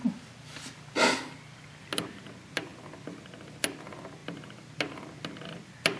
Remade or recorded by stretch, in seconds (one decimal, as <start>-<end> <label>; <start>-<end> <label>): 0.0-6.0 recorded

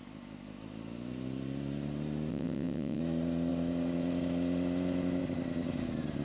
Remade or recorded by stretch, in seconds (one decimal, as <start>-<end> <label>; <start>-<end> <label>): 0.0-2.3 recorded; 2.3-3.0 remade; 3.0-6.2 recorded

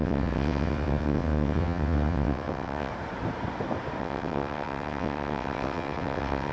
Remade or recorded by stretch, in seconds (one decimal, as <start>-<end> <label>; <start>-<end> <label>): 0.0-2.9 remade; 2.9-4.0 recorded; 4.0-6.5 remade

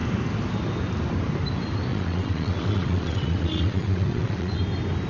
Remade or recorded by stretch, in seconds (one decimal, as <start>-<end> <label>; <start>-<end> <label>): 0.0-1.9 recorded; 1.9-4.6 remade; 4.6-5.1 recorded

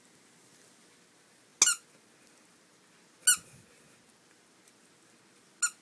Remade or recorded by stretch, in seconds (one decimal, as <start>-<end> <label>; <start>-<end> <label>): 0.0-5.8 recorded

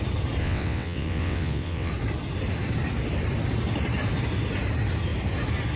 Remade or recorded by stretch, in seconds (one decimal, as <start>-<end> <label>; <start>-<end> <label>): 0.0-0.4 recorded; 0.4-1.9 remade; 1.9-5.8 recorded